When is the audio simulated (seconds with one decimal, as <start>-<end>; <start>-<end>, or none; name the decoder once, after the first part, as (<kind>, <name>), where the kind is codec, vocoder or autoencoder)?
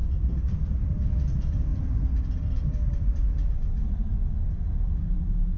0.0-1.7 (vocoder, BigVGAN v2); 2.2-4.1